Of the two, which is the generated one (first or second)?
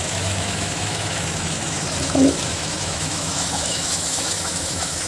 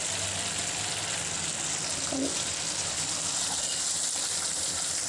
first